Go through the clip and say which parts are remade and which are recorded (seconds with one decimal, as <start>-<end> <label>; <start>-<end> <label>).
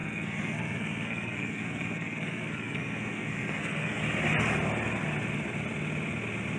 0.0-4.0 remade; 4.0-6.6 recorded